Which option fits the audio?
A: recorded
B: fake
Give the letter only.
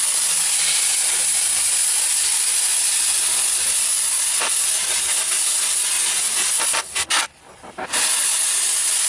A